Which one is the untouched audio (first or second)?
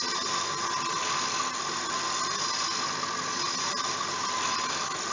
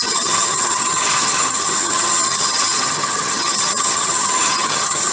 first